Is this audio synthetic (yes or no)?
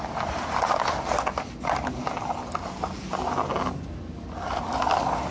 no